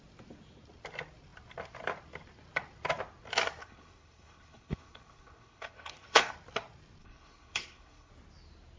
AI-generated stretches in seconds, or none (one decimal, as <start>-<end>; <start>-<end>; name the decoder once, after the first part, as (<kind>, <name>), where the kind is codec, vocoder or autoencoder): 3.6-6.3 (codec, HILCodec); 7.0-8.1